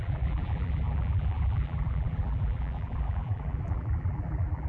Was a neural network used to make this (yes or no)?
yes